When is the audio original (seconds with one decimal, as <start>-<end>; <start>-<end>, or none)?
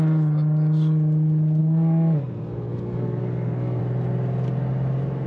0.0-1.6; 3.8-5.3